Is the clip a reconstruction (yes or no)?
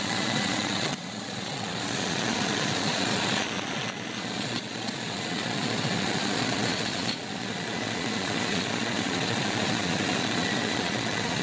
yes